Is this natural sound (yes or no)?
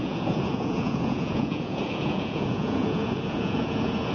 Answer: no